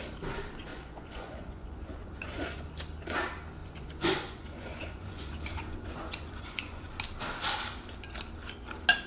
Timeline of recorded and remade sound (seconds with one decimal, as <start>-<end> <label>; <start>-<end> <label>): 0.0-0.7 recorded; 0.7-2.7 remade; 2.7-3.6 recorded; 3.6-6.9 remade; 6.9-9.1 recorded